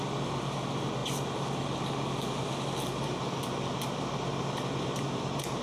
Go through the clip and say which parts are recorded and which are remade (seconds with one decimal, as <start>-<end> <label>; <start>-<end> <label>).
0.0-5.6 recorded